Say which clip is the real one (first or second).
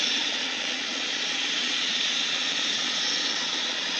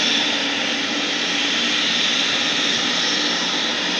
second